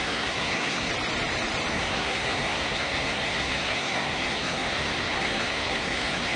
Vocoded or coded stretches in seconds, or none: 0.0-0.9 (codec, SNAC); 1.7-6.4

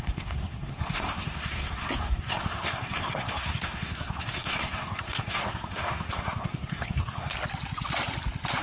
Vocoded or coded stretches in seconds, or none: 0.0-7.3 (codec, SNAC)

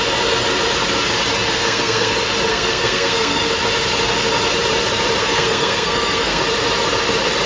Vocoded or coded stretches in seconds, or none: 1.5-2.1 (codec, SNAC); 2.5-3.5; 5.2-6.4

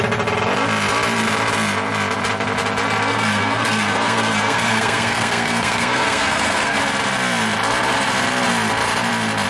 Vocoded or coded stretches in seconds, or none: 3.1-6.8 (codec, SNAC)

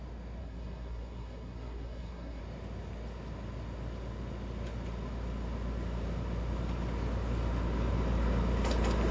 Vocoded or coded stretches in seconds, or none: 0.4-2.4 (codec, SNAC)

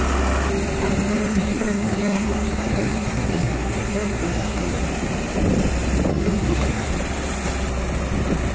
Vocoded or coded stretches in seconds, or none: 1.1-4.8 (codec, SNAC); 6.1-6.9

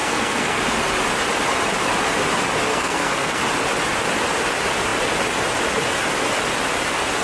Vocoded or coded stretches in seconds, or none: 0.0-0.6 (codec, SNAC); 2.7-3.4